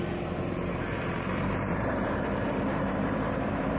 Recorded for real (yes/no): no